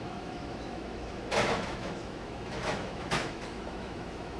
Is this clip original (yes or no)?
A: no